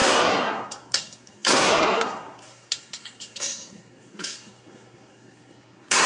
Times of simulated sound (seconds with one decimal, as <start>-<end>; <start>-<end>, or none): 0.0-6.1